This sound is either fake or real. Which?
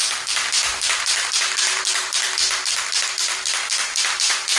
fake